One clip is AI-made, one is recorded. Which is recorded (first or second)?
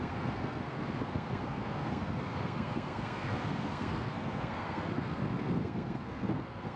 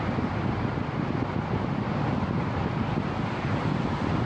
second